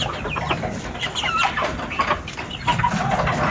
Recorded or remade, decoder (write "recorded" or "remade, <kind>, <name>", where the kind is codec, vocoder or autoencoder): recorded